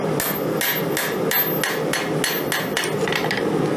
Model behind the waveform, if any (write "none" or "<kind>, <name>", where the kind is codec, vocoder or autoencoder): none